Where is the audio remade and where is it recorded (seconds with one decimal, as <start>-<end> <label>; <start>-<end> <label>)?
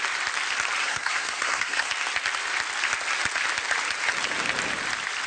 0.0-0.8 recorded; 0.8-1.9 remade; 1.9-5.3 recorded